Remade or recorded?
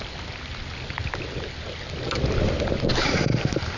recorded